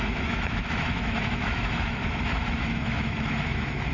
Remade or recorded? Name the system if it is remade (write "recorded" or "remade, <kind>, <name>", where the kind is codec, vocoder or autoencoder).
remade, autoencoder, DAC-VAE